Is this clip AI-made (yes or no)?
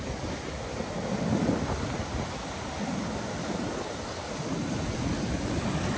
no